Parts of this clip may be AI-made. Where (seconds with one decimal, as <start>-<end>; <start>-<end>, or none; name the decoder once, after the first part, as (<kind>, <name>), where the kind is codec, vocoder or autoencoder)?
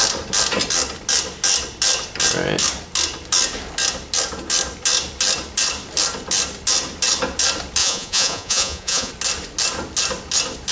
7.8-9.1 (vocoder, Vocos)